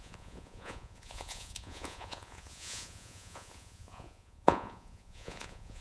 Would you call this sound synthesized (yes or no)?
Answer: yes